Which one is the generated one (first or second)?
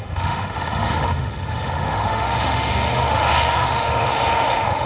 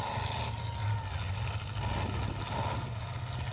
first